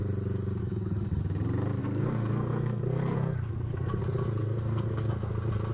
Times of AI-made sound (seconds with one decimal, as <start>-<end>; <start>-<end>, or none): 0.6-1.2; 1.8-4.0; 4.4-5.1

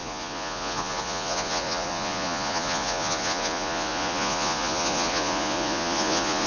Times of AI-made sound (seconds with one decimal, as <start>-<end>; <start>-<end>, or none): 0.0-6.5

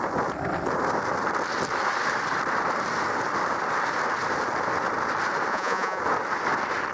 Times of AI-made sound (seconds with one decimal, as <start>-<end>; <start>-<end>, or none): 5.5-6.0